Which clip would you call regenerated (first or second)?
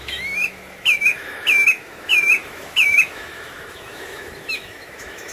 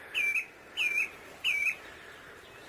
first